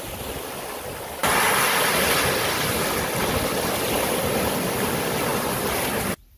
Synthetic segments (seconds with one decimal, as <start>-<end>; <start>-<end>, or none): 0.0-1.2; 4.2-5.3